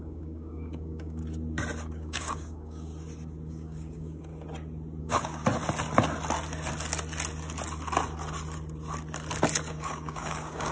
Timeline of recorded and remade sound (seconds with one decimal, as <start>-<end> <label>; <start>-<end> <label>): 0.0-1.2 remade; 1.2-1.9 recorded; 1.9-2.9 remade; 2.9-3.5 recorded; 3.5-4.3 remade; 4.3-5.0 recorded; 5.0-5.4 remade; 5.4-9.7 recorded; 9.7-10.7 remade